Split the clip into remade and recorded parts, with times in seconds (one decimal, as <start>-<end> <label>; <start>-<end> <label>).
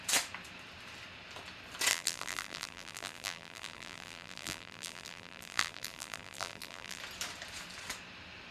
0.0-1.9 recorded; 1.9-7.0 remade; 7.0-8.5 recorded